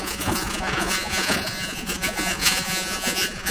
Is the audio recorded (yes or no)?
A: no